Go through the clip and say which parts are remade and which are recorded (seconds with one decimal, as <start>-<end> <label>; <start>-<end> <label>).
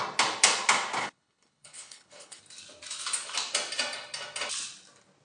0.0-1.0 recorded; 1.0-2.4 remade; 2.4-5.2 recorded